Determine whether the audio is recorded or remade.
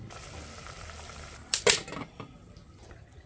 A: recorded